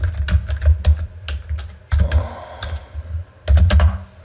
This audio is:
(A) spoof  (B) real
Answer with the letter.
B